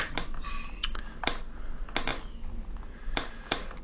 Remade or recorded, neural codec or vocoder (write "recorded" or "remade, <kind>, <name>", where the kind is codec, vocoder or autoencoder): recorded